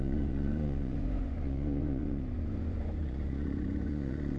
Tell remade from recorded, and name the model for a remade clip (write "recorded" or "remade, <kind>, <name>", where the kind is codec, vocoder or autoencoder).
remade, vocoder, Vocos